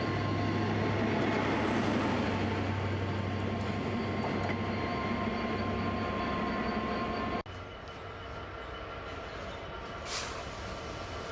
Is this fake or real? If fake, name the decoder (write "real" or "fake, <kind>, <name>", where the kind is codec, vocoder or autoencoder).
real